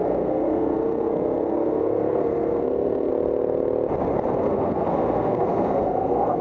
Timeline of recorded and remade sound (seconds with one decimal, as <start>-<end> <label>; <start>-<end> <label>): 0.0-3.1 remade; 3.1-4.4 recorded; 4.4-6.4 remade